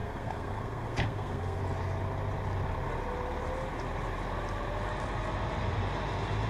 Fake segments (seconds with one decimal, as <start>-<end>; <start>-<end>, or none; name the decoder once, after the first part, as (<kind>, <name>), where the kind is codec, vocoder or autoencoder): 0.0-1.6 (codec, SNAC)